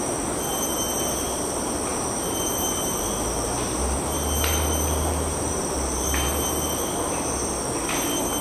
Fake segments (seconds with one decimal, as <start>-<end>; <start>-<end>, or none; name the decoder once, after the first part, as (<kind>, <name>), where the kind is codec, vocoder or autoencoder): 1.9-6.9 (vocoder, BigVGAN v2)